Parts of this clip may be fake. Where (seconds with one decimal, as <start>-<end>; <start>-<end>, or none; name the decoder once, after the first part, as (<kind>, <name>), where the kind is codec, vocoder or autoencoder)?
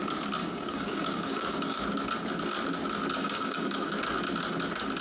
0.4-1.8 (codec, DAC); 3.2-3.9